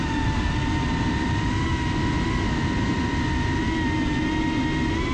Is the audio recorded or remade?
recorded